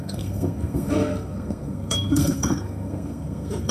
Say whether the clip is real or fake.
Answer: fake